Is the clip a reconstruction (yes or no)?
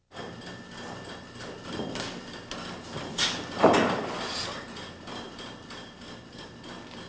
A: no